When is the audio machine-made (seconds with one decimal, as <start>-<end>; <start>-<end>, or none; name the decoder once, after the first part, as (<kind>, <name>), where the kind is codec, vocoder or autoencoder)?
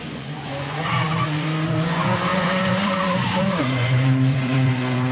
0.0-5.1 (vocoder, Vocos)